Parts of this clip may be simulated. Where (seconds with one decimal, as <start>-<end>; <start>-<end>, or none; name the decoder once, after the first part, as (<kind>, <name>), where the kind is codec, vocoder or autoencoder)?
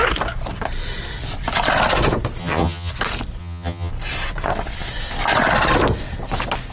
2.4-2.9 (vocoder, HiFi-GAN); 3.4-3.9